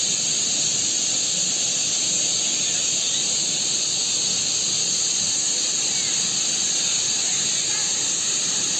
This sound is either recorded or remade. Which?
recorded